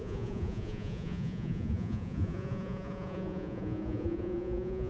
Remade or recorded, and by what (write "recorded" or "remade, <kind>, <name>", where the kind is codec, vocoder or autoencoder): remade, vocoder, Vocos